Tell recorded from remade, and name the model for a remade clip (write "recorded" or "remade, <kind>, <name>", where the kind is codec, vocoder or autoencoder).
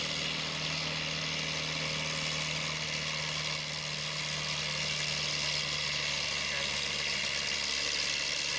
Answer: recorded